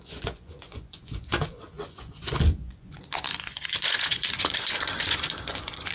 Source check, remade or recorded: remade